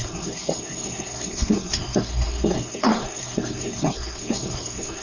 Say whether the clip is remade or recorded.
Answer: remade